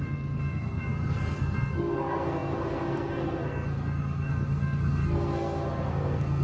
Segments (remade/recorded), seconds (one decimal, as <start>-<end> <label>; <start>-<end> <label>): 0.0-6.4 remade

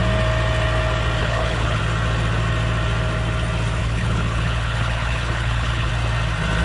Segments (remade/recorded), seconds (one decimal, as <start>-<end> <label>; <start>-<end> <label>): 0.0-1.2 recorded; 1.2-1.8 remade; 1.8-3.8 recorded; 3.8-5.9 remade; 5.9-6.6 recorded

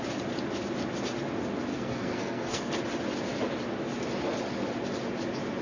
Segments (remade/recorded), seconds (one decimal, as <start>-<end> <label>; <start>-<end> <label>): 0.0-1.7 recorded; 1.7-2.7 remade; 2.7-5.6 recorded

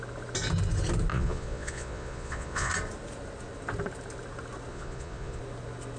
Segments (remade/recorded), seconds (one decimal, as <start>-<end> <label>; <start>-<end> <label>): 0.0-1.1 recorded; 1.1-2.7 remade; 2.7-4.7 recorded; 4.7-5.4 remade; 5.4-6.0 recorded

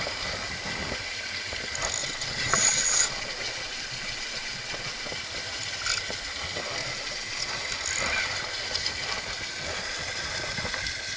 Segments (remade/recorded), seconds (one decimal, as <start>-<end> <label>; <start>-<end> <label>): 0.0-2.0 recorded; 2.0-5.1 remade; 5.1-6.8 recorded; 6.8-7.5 remade; 7.5-11.2 recorded